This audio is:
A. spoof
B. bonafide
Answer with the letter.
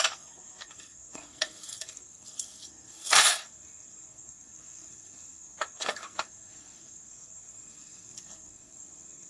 A